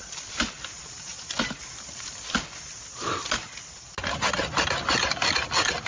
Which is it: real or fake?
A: real